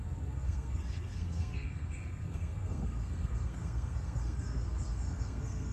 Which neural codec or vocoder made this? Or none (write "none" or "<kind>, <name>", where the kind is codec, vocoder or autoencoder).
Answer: codec, SNAC